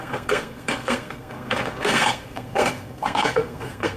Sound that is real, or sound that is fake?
fake